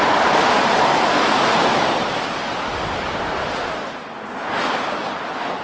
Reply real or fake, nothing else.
real